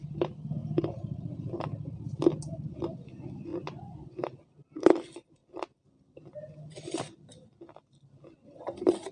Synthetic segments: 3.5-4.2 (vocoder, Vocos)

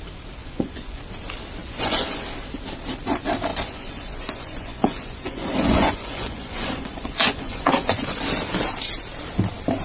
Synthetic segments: 0.4-1.0 (vocoder, Vocos); 1.6-2.2; 3.5-8.2

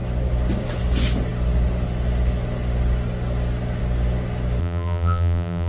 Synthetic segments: 4.6-5.7 (vocoder, BigVGAN v2)

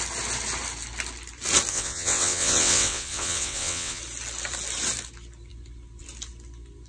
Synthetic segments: 1.7-4.0 (vocoder, WaveNeXt)

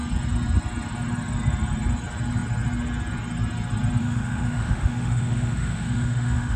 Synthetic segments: 4.0-6.6 (autoencoder, DAC-VAE)

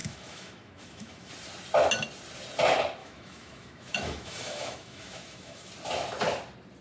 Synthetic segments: 0.0-1.3 (autoencoder, DAC-VAE); 3.0-5.7

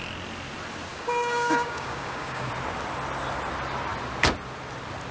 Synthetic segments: 0.9-2.5 (codec, DAC)